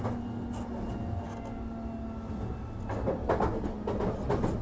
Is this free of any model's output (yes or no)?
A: yes